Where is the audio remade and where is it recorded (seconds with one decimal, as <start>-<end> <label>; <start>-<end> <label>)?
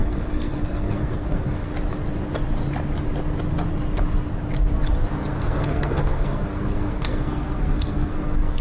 0.0-1.7 remade; 1.7-5.3 recorded; 5.3-8.6 remade